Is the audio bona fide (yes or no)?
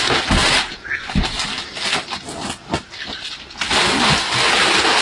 yes